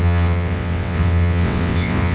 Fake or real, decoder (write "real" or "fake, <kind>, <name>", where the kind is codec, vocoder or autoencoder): fake, vocoder, WaveNeXt